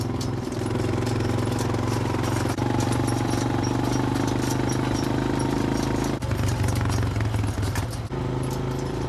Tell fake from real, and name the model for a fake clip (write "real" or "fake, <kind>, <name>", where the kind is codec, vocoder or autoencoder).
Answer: real